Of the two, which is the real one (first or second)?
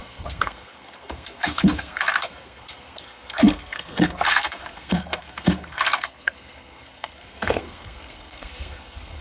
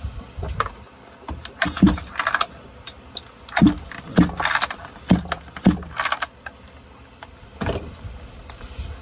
second